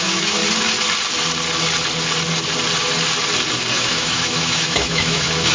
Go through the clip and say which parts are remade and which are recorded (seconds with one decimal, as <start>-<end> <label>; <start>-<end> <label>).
0.0-0.4 remade; 0.4-3.7 recorded; 3.7-5.5 remade